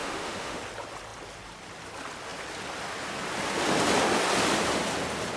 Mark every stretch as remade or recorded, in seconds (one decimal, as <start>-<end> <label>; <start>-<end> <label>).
0.0-0.6 remade; 0.6-5.4 recorded